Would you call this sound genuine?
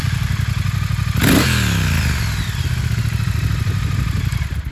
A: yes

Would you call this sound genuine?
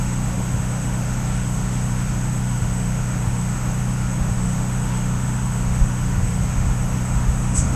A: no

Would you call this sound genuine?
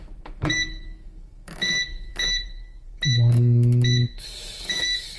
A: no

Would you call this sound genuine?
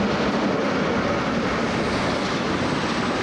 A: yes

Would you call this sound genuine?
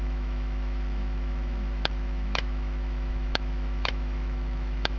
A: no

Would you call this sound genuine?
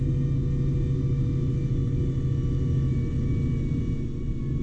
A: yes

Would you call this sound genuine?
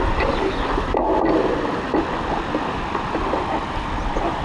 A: yes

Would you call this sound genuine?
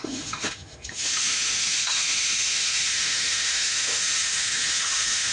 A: no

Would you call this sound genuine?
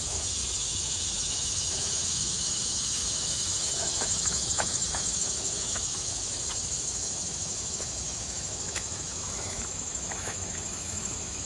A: no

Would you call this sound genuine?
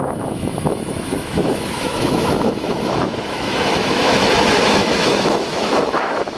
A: no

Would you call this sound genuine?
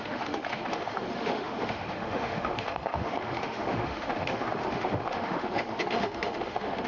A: no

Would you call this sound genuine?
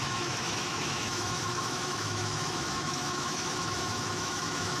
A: no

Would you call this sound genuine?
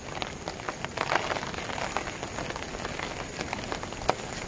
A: yes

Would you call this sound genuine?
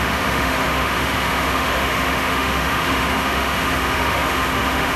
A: no